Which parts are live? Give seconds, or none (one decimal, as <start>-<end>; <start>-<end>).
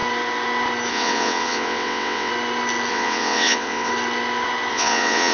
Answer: 0.0-0.9; 2.3-2.9; 3.9-4.7